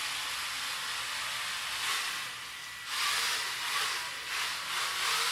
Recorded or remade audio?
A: recorded